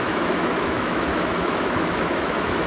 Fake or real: fake